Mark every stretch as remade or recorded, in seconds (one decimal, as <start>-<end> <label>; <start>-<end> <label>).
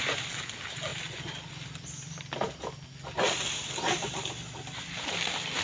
0.0-5.6 recorded